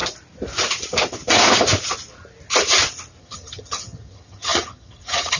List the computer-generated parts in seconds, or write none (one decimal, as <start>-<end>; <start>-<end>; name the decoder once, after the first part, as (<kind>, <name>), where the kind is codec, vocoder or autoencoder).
3.2-5.4 (vocoder, HiFi-GAN)